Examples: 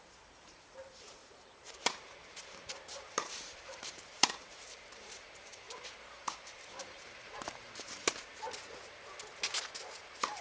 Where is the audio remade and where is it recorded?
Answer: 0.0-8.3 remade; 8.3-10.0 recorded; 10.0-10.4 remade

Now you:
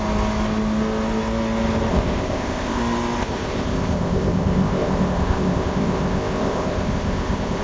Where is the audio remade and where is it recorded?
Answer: 0.0-1.9 recorded; 1.9-2.8 remade; 2.8-3.2 recorded; 3.2-7.6 remade

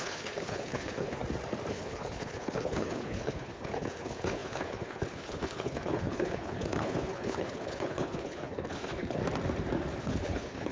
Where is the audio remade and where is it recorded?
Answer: 0.0-1.2 remade; 1.2-1.7 recorded; 1.7-9.2 remade; 9.2-10.0 recorded; 10.0-10.7 remade